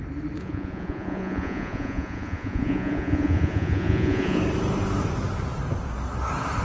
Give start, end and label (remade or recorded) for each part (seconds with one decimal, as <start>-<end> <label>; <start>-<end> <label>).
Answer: 0.0-0.4 recorded; 0.4-4.4 remade; 4.4-6.6 recorded